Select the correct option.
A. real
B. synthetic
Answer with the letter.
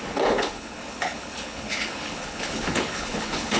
B